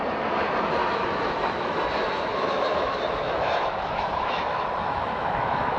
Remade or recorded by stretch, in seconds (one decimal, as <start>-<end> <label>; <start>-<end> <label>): 0.0-0.8 recorded; 0.8-1.8 remade; 1.8-2.3 recorded; 2.3-5.8 remade